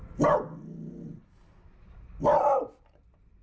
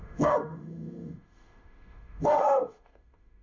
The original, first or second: first